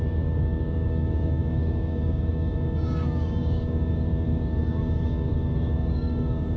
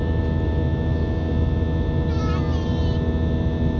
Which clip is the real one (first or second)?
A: second